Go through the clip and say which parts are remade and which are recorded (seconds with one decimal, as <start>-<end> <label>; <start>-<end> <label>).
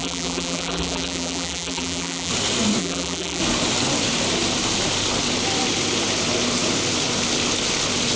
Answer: 0.0-2.3 remade; 2.3-2.8 recorded; 2.8-3.4 remade; 3.4-8.2 recorded